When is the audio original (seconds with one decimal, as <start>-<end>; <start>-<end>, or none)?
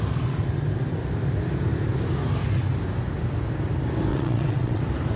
0.0-4.1; 4.8-5.2